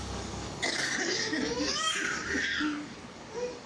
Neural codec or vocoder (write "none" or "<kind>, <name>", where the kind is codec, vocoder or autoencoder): codec, DAC